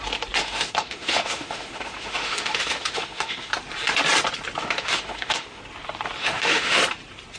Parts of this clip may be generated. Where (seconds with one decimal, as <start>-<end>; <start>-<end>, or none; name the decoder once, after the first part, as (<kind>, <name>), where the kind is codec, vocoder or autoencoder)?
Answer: 0.4-3.5 (autoencoder, DAC-VAE); 4.6-5.6; 6.2-6.8